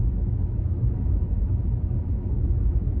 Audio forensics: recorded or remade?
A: remade